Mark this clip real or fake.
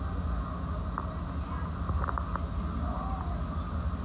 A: real